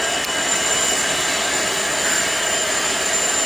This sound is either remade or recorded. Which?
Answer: recorded